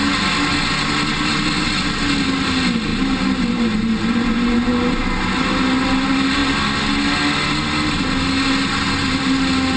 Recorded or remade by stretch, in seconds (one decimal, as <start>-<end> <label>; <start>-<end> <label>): 0.0-9.8 recorded